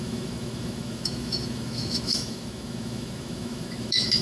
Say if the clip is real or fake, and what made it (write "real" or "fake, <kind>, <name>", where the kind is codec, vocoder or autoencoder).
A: fake, autoencoder, DAC-VAE